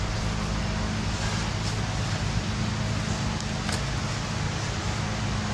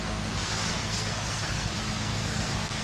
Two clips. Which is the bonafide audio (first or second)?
first